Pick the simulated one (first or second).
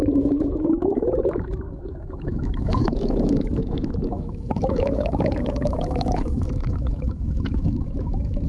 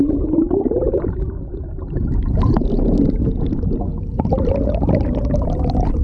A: first